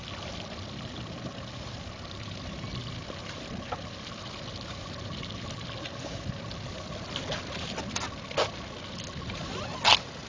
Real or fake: real